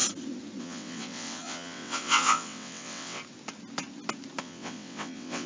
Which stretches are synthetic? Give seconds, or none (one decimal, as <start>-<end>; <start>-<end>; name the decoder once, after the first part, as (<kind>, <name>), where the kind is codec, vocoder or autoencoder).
0.6-3.2 (vocoder, WaveNeXt); 4.4-5.5